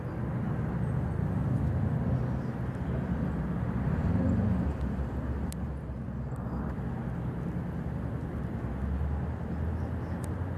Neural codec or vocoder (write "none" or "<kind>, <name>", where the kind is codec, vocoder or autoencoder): none